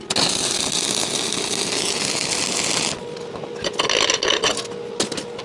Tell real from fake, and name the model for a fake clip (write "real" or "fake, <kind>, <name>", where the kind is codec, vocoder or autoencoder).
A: real